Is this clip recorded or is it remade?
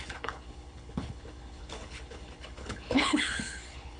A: remade